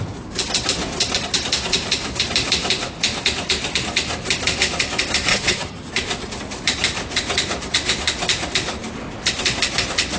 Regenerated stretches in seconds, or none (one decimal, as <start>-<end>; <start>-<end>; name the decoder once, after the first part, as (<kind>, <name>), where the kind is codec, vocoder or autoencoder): 5.3-5.9 (vocoder, HiFi-GAN)